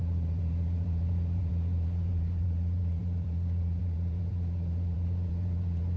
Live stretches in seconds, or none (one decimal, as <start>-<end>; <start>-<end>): none